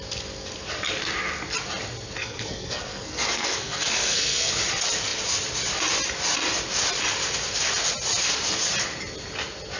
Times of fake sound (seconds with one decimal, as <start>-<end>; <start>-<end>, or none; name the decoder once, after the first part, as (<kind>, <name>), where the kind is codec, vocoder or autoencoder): 2.2-4.5 (codec, SNAC)